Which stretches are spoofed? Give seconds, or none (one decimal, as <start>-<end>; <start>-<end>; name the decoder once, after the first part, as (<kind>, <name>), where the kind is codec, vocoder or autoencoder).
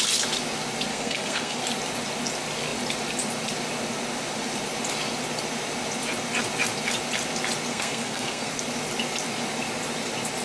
0.9-1.6 (codec, SNAC); 7.7-8.5